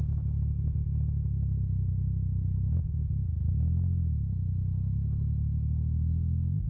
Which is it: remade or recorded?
recorded